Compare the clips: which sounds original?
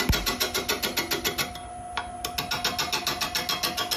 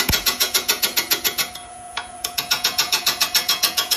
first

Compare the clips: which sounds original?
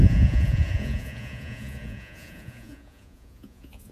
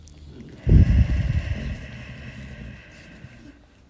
second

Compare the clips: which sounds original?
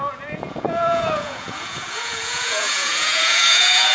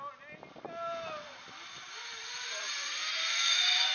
second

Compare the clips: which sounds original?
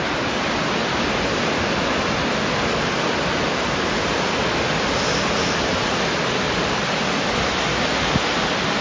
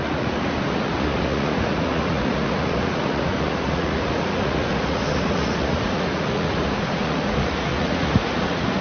first